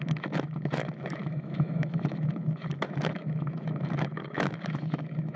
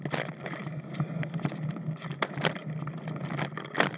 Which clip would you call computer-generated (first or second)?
first